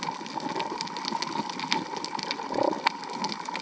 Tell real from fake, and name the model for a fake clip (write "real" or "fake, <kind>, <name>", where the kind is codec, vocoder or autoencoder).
real